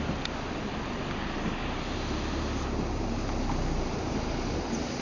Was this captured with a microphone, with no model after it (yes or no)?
yes